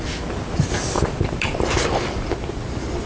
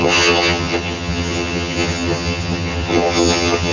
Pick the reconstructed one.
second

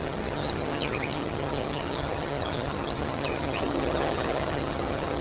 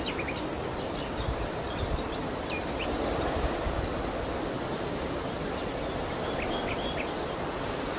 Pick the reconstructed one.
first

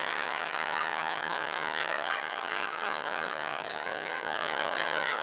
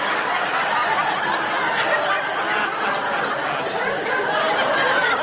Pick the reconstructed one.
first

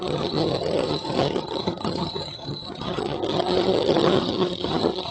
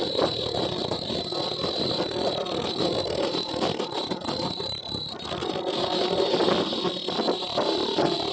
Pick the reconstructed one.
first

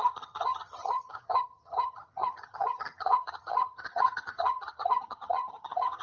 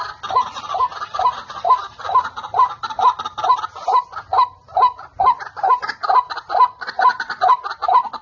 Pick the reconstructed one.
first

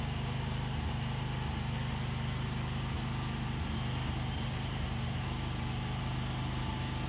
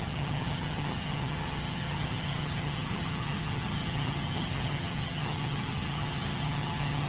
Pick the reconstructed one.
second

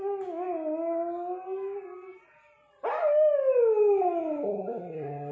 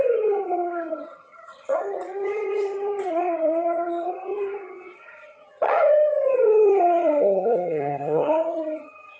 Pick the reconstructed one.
second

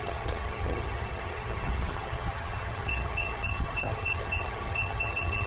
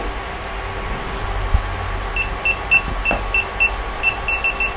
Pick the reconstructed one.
first